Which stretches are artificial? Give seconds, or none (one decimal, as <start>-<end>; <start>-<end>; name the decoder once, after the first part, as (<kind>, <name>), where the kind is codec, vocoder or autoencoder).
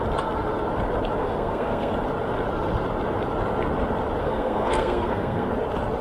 1.2-1.9 (codec, SNAC); 4.2-5.5